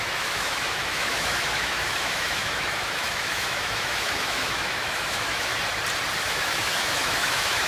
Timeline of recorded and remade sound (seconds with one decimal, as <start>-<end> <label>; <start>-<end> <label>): 0.0-5.5 remade; 5.5-6.2 recorded; 6.2-7.7 remade